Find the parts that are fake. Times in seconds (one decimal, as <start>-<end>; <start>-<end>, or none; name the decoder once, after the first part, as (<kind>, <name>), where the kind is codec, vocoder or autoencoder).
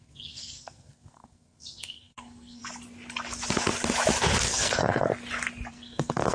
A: 0.0-2.6 (codec, SNAC); 4.5-5.1; 5.7-6.3